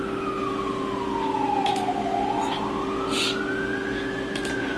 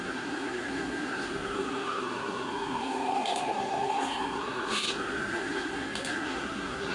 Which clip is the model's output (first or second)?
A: second